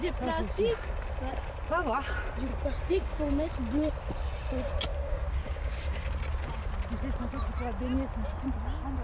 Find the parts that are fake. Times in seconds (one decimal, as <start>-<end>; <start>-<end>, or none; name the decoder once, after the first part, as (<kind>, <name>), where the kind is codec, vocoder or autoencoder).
2.5-3.5 (codec, DAC); 4.9-6.1